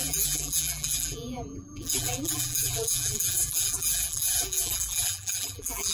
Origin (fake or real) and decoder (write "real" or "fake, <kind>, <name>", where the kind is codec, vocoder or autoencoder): fake, vocoder, BigVGAN v2